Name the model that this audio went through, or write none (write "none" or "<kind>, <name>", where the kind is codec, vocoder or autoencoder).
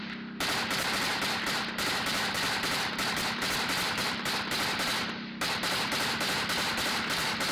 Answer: vocoder, BigVGAN v2